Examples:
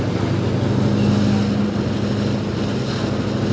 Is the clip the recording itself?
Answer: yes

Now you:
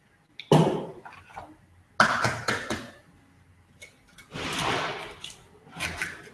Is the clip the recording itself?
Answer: yes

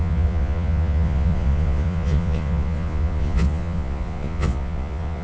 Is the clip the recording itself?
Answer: no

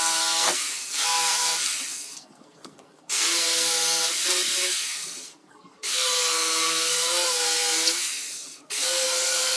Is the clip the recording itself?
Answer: no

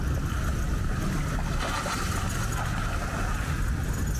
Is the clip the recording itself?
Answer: yes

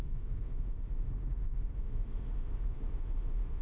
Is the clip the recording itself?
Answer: no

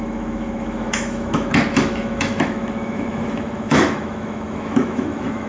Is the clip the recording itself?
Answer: no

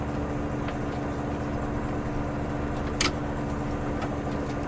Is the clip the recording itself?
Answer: yes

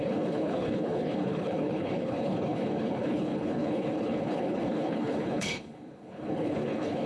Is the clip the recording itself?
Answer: no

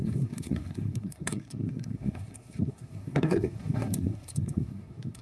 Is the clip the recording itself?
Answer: no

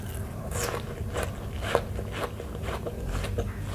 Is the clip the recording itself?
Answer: yes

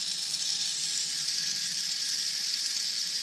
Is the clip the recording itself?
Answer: no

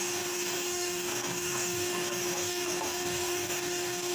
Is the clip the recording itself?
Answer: no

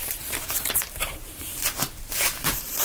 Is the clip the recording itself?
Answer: no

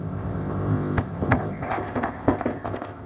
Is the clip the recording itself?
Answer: no